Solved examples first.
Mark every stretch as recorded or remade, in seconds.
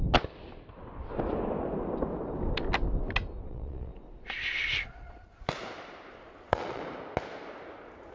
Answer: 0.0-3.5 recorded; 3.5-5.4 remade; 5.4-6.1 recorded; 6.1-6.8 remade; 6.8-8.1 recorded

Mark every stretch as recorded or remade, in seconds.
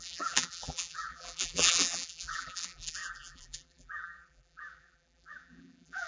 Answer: 0.0-6.1 remade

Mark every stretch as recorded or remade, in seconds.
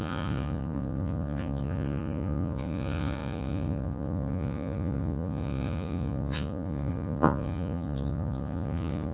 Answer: 0.0-9.1 remade